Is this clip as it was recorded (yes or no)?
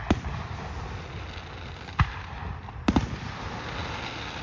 yes